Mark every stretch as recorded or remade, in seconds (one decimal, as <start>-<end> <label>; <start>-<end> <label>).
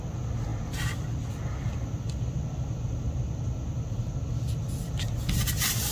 0.0-5.9 recorded